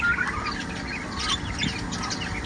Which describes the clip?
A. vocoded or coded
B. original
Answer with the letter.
B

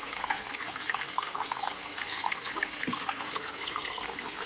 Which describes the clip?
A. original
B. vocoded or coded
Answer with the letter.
B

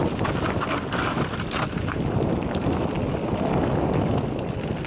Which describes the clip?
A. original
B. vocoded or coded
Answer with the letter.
A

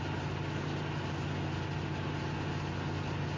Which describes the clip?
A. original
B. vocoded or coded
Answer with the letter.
A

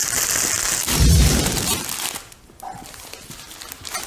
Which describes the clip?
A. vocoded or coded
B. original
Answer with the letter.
B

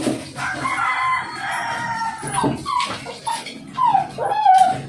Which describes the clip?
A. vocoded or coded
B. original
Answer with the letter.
B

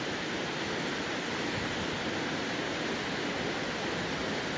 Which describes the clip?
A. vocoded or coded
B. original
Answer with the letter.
B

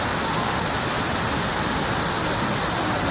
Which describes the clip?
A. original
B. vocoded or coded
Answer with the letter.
A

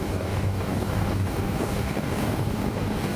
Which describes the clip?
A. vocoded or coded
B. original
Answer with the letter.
A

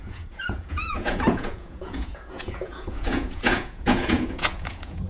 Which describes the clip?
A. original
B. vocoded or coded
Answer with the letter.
B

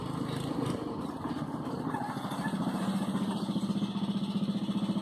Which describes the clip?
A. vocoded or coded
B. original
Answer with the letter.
B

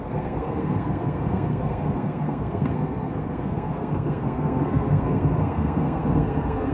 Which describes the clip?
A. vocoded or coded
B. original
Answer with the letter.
A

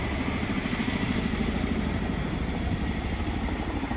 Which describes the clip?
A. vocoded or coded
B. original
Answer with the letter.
B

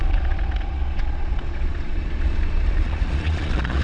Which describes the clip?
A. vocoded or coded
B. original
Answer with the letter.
A